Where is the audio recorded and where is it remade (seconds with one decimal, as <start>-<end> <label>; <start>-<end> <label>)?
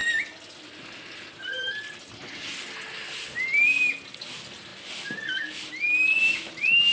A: 0.0-6.9 recorded